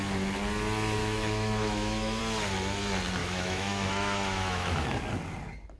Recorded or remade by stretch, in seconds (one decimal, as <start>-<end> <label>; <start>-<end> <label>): 0.0-1.0 recorded; 1.0-2.2 remade; 2.2-3.2 recorded; 3.2-5.0 remade; 5.0-5.8 recorded